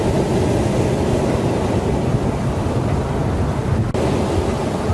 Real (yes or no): yes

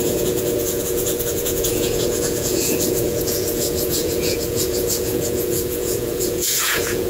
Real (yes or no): no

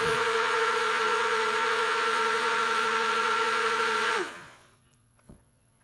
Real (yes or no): no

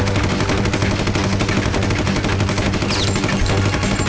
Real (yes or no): yes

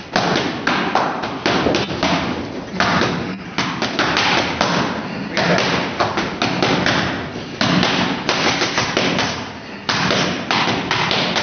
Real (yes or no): yes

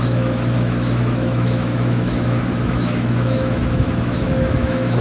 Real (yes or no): no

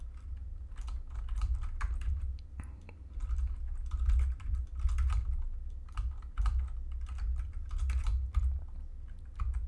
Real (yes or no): yes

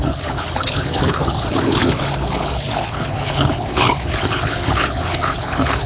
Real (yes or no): no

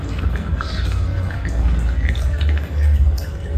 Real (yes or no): no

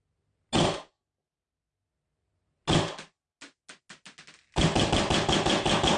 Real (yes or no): yes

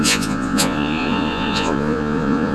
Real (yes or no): no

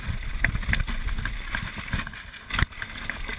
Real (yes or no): yes